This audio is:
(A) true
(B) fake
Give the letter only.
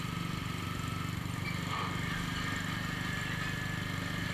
A